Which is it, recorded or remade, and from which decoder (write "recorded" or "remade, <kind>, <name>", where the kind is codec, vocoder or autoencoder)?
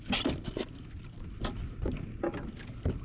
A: recorded